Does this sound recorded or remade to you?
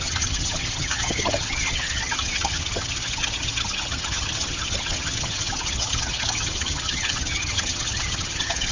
remade